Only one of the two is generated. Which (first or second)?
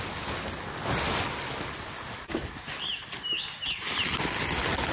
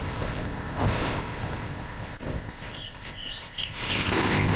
second